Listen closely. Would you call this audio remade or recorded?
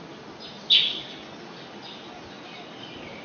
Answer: recorded